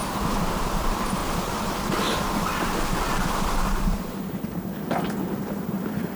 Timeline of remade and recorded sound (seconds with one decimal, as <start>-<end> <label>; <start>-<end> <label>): 0.0-1.2 remade; 1.2-1.8 recorded; 1.8-2.5 remade; 2.5-3.1 recorded; 3.1-6.2 remade